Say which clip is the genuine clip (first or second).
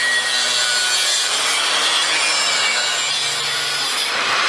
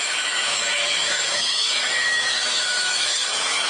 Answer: first